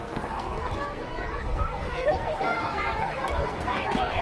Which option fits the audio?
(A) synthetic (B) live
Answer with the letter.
A